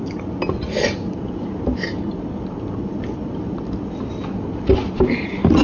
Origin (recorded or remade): recorded